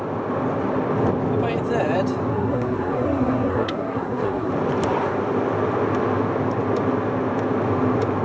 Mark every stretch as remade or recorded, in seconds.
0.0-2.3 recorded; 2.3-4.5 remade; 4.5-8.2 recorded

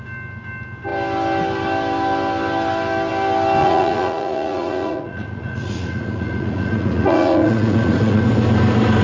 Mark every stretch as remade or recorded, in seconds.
0.0-3.6 recorded; 3.6-8.2 remade; 8.2-9.0 recorded

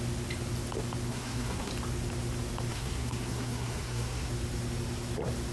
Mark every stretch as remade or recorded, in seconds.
0.0-1.1 recorded; 1.1-1.7 remade; 1.7-2.7 recorded; 2.7-4.3 remade; 4.3-5.5 recorded

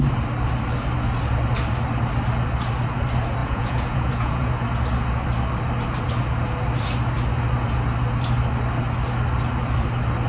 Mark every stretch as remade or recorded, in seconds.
0.0-3.4 recorded; 3.4-4.5 remade; 4.5-10.3 recorded

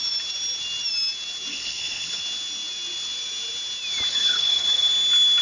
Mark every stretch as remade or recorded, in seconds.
0.0-1.5 recorded; 1.5-2.2 remade; 2.2-4.1 recorded; 4.1-4.9 remade; 4.9-5.4 recorded

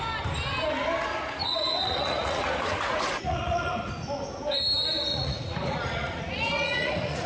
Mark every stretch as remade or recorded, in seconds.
0.0-1.1 recorded; 1.1-3.9 remade; 3.9-5.1 recorded; 5.1-7.3 remade

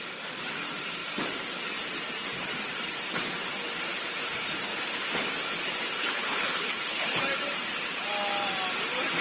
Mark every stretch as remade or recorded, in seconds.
0.0-6.0 recorded; 6.0-7.2 remade; 7.2-9.2 recorded